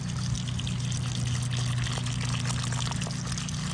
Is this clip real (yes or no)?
yes